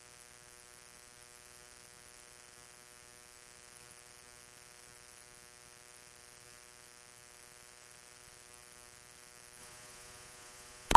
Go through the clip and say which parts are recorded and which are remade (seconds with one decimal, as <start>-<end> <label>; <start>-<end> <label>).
0.0-9.6 recorded; 9.6-11.0 remade